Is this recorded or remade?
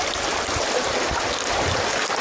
recorded